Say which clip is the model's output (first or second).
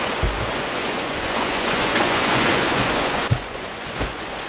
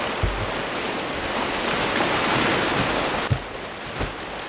first